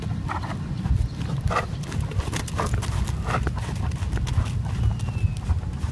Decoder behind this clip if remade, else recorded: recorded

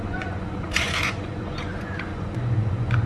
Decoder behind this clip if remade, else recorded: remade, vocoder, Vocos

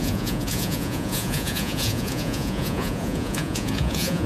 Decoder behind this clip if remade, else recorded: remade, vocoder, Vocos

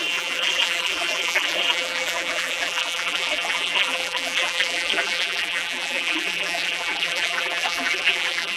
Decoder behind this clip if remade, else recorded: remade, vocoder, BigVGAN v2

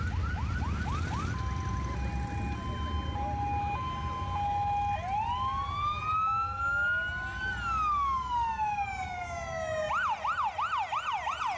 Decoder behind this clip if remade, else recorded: recorded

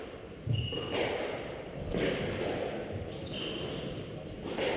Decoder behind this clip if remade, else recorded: recorded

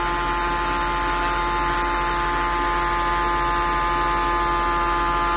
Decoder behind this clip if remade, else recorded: recorded